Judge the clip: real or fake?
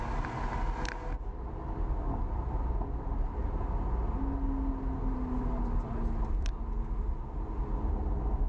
real